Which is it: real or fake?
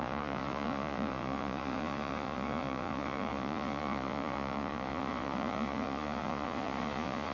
fake